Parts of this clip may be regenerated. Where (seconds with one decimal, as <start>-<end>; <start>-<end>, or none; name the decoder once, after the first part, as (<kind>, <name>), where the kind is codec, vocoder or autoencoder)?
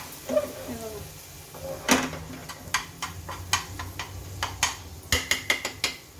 none